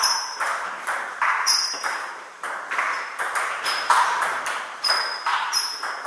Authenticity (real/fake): fake